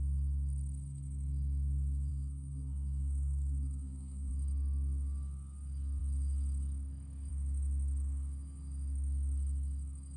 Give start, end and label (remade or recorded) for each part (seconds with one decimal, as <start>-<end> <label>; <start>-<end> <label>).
0.0-2.1 recorded; 2.1-4.3 remade; 4.3-10.2 recorded